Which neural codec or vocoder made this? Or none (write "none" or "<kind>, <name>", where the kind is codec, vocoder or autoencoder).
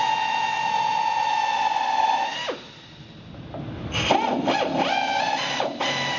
none